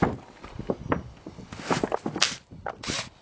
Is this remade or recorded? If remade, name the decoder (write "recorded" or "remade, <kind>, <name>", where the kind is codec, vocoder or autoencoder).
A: recorded